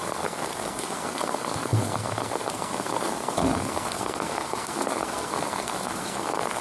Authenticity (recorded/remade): remade